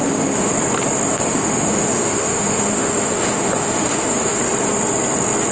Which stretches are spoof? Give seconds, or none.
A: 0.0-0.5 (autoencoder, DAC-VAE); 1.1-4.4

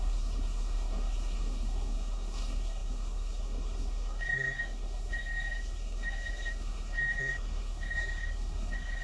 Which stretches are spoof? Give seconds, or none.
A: 0.0-9.0 (codec, SNAC)

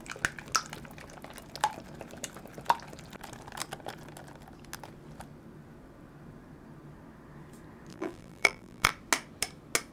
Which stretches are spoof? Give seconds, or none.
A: 7.9-8.9 (vocoder, BigVGAN v2)

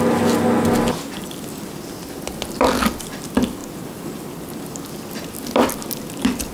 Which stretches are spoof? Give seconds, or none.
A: none

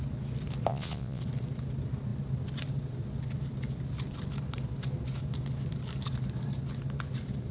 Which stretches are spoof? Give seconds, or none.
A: 0.7-1.2 (vocoder, Vocos)

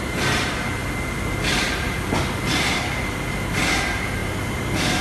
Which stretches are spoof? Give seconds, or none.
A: none